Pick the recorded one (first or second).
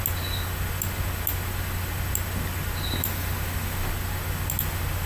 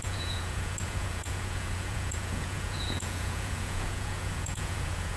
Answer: first